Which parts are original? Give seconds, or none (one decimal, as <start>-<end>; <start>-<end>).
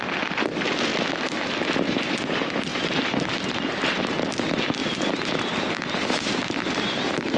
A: 0.9-2.1; 4.8-7.4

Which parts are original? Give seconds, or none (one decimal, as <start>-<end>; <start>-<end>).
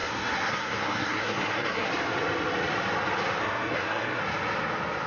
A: 1.9-3.4; 4.2-5.1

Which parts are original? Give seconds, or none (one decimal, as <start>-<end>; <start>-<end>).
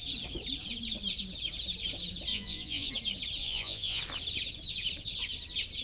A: 0.0-2.3; 2.9-3.4; 4.0-5.8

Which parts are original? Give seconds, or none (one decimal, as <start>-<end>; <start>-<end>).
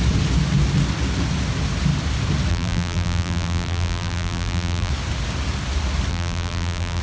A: 0.0-2.5; 4.9-6.1